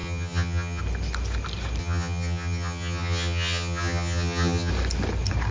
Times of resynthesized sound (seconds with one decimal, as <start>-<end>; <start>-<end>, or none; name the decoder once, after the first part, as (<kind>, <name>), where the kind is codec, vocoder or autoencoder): 0.0-0.8 (vocoder, HiFi-GAN); 1.8-4.7